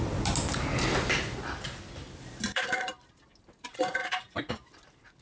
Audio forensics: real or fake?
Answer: real